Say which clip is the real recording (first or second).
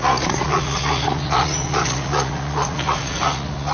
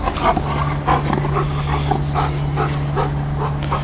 second